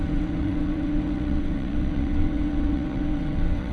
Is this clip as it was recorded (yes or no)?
no